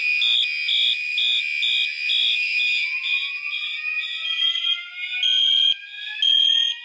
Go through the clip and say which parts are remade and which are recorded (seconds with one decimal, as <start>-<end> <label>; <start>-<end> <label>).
0.0-0.7 recorded; 0.7-1.4 remade; 1.4-2.2 recorded; 2.2-2.9 remade; 2.9-6.8 recorded